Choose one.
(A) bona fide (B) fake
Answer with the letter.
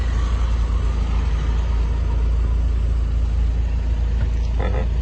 A